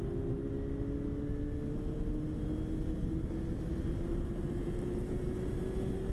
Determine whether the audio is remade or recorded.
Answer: recorded